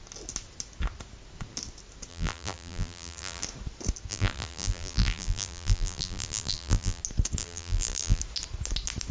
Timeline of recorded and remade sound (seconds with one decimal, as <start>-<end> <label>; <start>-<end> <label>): 0.0-2.1 recorded; 2.1-3.4 remade; 3.4-4.1 recorded; 4.1-7.0 remade; 7.0-7.4 recorded; 7.4-8.2 remade; 8.2-9.1 recorded